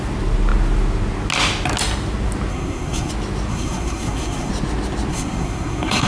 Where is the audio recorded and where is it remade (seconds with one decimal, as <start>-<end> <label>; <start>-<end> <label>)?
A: 0.0-2.5 recorded; 2.5-3.1 remade; 3.1-3.5 recorded; 3.5-4.5 remade; 4.5-5.1 recorded; 5.1-6.1 remade